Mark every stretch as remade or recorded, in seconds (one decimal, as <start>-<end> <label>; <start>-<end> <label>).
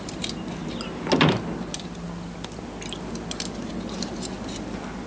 0.0-5.1 recorded